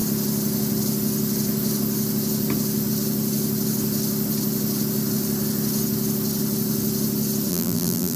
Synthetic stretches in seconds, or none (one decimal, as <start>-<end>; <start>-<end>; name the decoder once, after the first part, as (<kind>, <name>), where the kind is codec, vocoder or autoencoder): 7.5-8.2 (vocoder, BigVGAN v2)